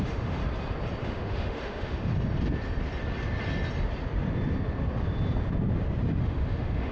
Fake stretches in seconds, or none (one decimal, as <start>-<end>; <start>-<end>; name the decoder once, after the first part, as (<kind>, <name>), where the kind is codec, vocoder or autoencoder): 0.0-0.4 (autoencoder, DAC-VAE); 1.0-2.1; 6.2-6.9